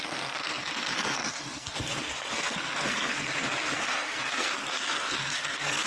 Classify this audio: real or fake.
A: fake